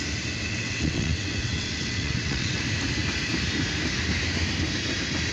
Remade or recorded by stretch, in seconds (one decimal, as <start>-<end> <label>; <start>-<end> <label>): 0.0-0.5 recorded; 0.5-2.6 remade; 2.6-5.3 recorded